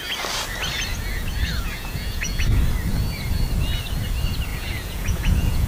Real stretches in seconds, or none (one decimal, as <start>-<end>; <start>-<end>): 0.0-0.9; 2.4-4.5